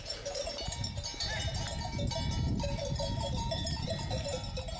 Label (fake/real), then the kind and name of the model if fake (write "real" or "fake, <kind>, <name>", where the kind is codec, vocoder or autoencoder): fake, vocoder, BigVGAN v2